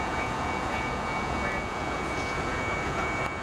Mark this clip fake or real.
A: fake